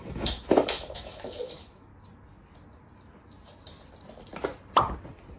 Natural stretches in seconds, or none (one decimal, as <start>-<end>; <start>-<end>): 1.9-5.4